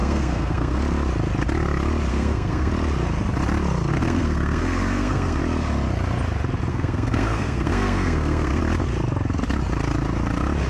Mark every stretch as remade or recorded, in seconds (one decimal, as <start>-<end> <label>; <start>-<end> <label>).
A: 0.0-0.8 remade; 0.8-2.1 recorded; 2.1-2.7 remade; 2.7-3.9 recorded; 3.9-5.4 remade; 5.4-6.7 recorded; 6.7-8.6 remade; 8.6-10.7 recorded